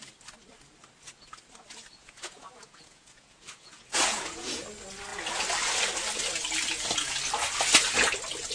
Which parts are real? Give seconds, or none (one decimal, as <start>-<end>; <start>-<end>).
0.0-2.0; 4.6-8.5

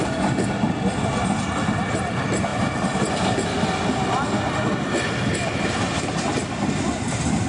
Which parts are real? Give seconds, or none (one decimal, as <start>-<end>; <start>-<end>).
0.0-7.5

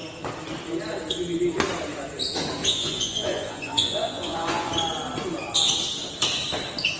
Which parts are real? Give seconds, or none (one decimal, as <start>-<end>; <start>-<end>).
0.0-2.6; 4.7-7.0

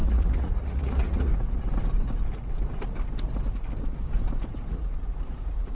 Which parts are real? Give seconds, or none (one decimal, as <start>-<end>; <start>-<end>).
1.3-4.7

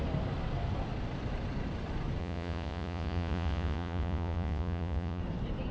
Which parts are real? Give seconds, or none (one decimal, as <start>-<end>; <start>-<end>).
0.0-2.2; 5.2-5.7

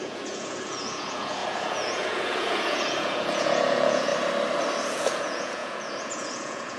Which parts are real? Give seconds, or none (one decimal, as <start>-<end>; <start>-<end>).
4.1-4.8

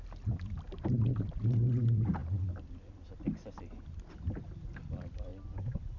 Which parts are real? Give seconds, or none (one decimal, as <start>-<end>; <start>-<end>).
0.0-6.0

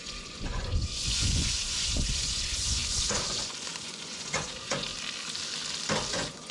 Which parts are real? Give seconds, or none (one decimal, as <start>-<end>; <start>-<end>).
4.9-6.1